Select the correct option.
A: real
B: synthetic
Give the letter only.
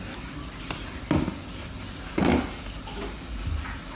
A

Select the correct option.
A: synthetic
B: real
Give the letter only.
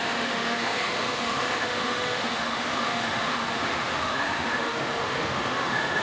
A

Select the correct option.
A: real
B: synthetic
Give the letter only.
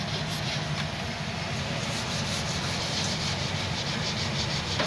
A